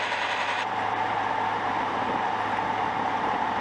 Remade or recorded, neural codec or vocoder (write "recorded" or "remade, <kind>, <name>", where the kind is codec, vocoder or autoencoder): remade, vocoder, BigVGAN v2